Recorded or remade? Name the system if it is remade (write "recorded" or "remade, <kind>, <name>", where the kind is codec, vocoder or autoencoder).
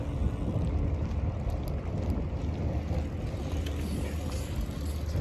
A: recorded